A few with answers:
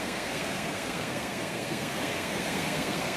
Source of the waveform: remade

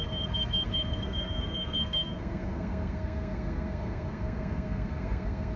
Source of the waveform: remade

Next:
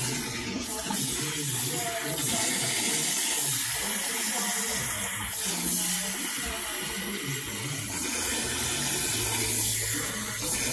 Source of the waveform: recorded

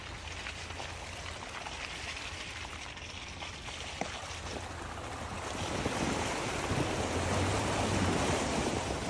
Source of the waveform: recorded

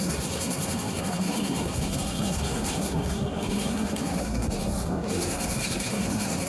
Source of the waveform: remade